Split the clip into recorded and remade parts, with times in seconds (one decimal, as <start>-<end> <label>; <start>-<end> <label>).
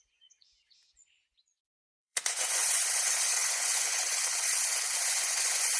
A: 0.0-5.8 remade